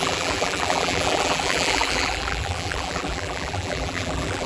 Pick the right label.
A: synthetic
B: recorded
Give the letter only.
A